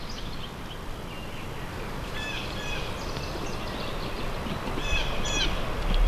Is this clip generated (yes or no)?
no